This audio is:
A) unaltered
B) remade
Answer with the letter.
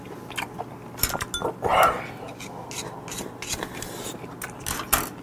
A